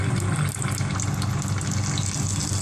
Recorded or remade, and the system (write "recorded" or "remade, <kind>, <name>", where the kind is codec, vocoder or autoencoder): recorded